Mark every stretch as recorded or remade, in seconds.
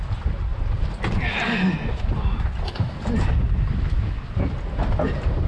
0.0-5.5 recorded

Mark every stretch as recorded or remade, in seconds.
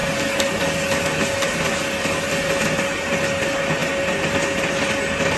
0.0-5.4 recorded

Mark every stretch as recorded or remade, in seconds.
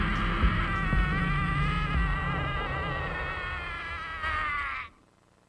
0.0-5.5 recorded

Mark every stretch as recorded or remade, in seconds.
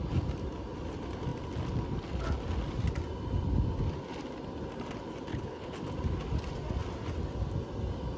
0.0-5.3 recorded; 5.3-5.8 remade; 5.8-8.2 recorded